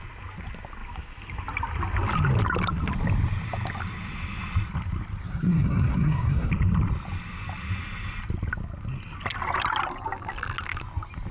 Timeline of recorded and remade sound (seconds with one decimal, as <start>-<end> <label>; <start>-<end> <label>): 0.0-5.2 recorded; 5.2-6.5 remade; 6.5-11.3 recorded